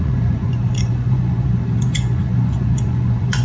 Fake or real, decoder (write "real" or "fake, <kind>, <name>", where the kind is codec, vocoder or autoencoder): fake, vocoder, Vocos